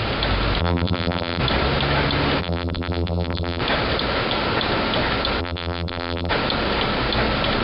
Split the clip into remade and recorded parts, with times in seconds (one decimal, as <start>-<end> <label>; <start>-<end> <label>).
0.0-0.6 recorded; 0.6-1.4 remade; 1.4-2.4 recorded; 2.4-3.6 remade; 3.6-5.4 recorded; 5.4-6.3 remade; 6.3-7.6 recorded